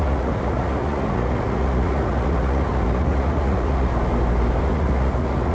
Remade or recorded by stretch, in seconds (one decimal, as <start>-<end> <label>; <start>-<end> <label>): 0.0-3.9 remade; 3.9-4.6 recorded; 4.6-5.5 remade

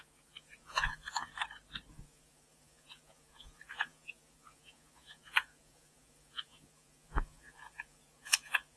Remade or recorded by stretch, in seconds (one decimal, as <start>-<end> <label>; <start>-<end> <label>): 0.0-1.3 remade; 1.3-1.9 recorded; 1.9-8.8 remade

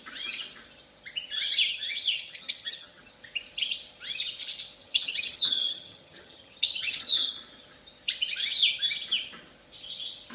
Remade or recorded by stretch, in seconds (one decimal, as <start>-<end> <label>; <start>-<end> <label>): 0.0-1.7 recorded; 1.7-3.0 remade; 3.0-4.8 recorded; 4.8-7.3 remade; 7.3-10.3 recorded